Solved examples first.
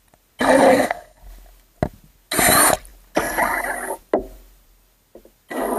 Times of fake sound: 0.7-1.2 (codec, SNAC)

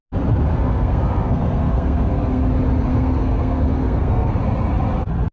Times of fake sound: 0.5-2.5 (codec, SNAC); 2.9-4.3

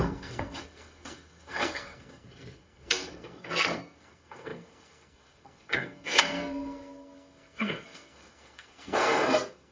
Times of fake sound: 0.0-9.7 (codec, SNAC)

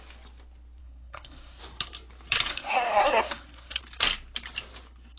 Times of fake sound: 0.8-1.6 (codec, SNAC); 2.5-3.8

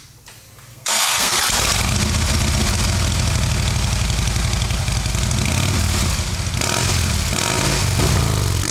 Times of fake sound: 0.7-1.4 (codec, SNAC)

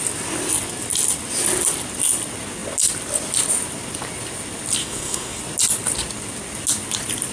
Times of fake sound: 4.8-5.4 (codec, SNAC)

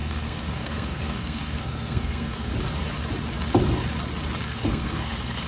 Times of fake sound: 0.0-2.5 (codec, SNAC); 4.4-5.5